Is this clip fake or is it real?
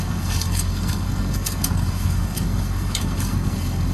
fake